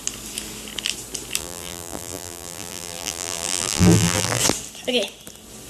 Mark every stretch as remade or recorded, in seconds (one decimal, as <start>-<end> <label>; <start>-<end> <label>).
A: 0.0-1.4 recorded; 1.4-4.4 remade; 4.4-5.7 recorded